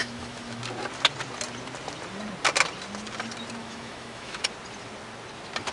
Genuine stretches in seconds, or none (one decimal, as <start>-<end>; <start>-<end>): 0.6-3.6; 4.4-5.7